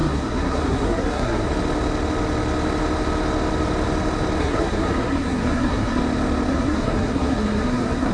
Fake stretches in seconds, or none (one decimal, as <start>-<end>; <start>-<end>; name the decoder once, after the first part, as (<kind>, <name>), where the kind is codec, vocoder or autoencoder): 0.0-1.5 (codec, SNAC); 4.4-6.0; 6.5-8.1